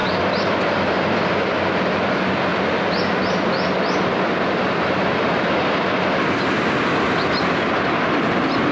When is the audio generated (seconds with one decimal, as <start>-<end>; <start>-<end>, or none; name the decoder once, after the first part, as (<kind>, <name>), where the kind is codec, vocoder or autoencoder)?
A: 0.0-1.5 (vocoder, BigVGAN v2)